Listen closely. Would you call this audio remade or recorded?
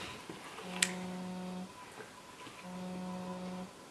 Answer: recorded